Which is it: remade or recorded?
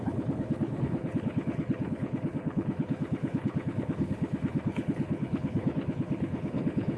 remade